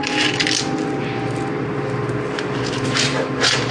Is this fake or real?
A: real